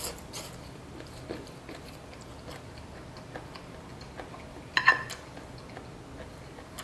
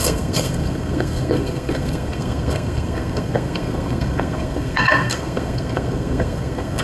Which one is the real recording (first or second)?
first